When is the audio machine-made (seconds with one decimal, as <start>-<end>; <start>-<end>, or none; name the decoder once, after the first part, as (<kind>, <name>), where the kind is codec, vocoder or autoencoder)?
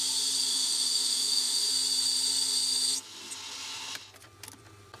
0.5-1.7 (autoencoder, DAC-VAE)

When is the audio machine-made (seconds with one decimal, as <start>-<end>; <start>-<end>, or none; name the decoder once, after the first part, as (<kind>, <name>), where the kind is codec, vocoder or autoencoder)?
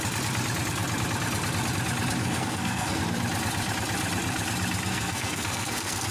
2.2-3.0 (codec, SNAC); 4.9-6.1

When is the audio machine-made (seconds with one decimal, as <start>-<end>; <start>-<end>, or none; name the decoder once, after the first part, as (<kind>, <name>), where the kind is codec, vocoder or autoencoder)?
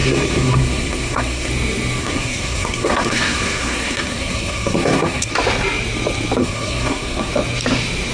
0.0-1.5 (codec, SNAC); 2.0-5.3; 6.4-7.3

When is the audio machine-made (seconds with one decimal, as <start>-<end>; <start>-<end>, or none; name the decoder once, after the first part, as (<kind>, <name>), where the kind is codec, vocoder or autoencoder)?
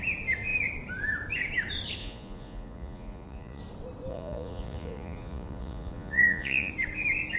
2.0-3.6 (vocoder, Vocos); 4.1-6.7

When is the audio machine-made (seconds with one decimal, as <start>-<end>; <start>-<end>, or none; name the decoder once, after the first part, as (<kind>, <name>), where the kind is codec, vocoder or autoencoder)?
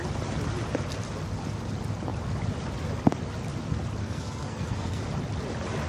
4.0-5.0 (codec, SNAC)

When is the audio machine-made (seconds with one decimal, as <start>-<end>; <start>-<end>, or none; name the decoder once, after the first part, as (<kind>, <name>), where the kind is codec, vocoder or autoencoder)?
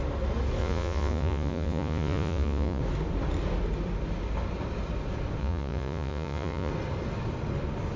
0.6-2.8 (vocoder, Vocos); 5.4-6.7